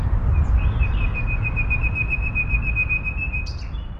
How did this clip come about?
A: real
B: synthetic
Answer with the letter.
A